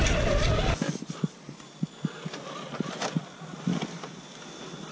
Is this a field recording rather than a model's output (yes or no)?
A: yes